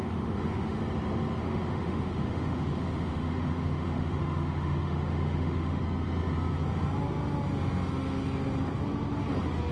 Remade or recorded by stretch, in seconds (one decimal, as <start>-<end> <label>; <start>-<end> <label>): 0.0-0.8 remade; 0.8-1.4 recorded; 1.4-5.8 remade; 5.8-9.7 recorded